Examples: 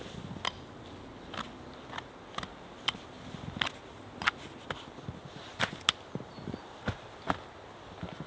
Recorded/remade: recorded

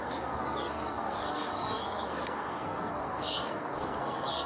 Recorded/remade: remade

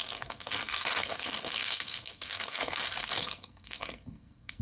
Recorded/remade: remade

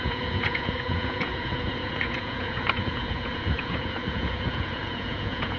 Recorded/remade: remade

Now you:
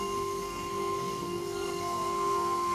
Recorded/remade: remade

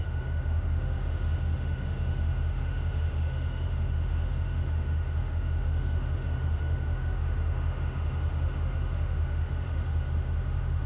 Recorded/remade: remade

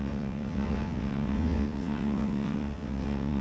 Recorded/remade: remade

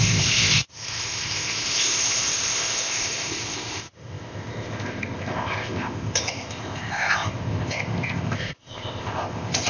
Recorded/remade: remade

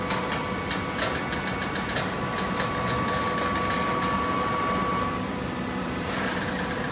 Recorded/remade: recorded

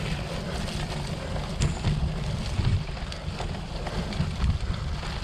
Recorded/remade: recorded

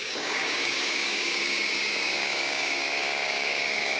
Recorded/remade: remade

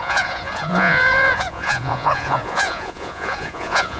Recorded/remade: remade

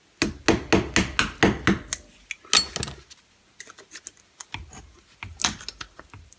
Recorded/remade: recorded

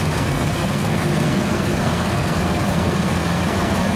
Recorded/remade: remade